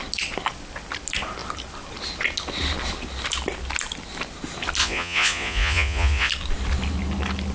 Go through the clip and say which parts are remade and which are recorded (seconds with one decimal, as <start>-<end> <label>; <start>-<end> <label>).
0.0-4.8 recorded; 4.8-6.3 remade; 6.3-7.5 recorded